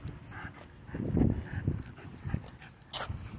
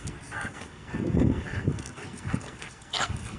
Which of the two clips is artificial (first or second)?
second